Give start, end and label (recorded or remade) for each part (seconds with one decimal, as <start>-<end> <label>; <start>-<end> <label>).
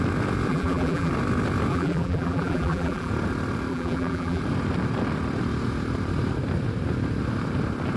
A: 0.0-0.5 recorded; 0.5-1.1 remade; 1.1-1.7 recorded; 1.7-3.1 remade; 3.1-3.7 recorded; 3.7-4.4 remade; 4.4-8.0 recorded